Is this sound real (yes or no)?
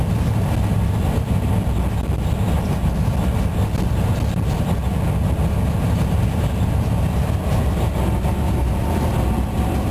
yes